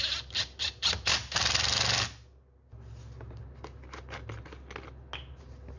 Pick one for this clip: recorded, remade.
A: recorded